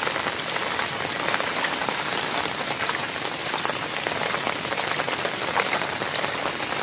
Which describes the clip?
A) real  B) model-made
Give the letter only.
A